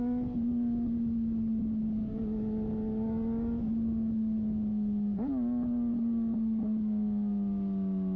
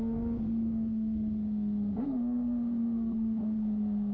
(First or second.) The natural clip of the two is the first